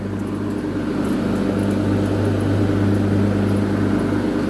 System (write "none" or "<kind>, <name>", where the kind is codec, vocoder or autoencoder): none